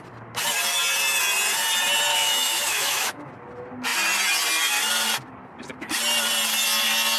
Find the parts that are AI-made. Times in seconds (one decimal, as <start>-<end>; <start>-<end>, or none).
2.1-3.3